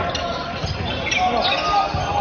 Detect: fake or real real